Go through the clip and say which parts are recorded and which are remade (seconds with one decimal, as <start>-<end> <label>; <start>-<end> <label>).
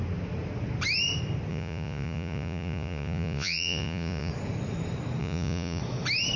0.0-1.5 recorded; 1.5-4.3 remade; 4.3-5.2 recorded; 5.2-5.8 remade; 5.8-6.4 recorded